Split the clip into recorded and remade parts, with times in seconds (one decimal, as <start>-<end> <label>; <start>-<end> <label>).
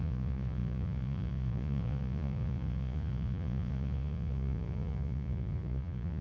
0.0-6.2 remade